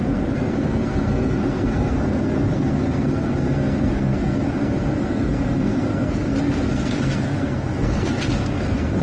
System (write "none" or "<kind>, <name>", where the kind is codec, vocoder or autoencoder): codec, SNAC